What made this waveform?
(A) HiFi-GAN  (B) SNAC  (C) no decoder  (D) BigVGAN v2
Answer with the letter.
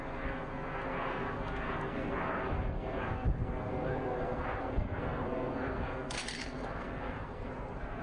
B